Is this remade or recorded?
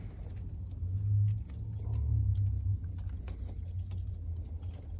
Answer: recorded